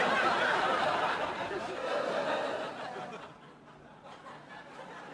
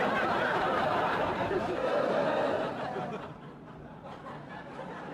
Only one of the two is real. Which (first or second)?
first